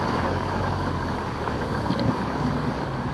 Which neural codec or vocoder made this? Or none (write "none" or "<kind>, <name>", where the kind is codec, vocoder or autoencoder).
codec, DAC